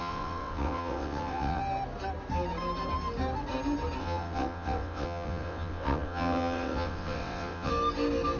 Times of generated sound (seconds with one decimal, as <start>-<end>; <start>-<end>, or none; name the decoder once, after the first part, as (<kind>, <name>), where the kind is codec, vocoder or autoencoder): 0.0-1.6 (vocoder, WaveNeXt); 4.0-7.7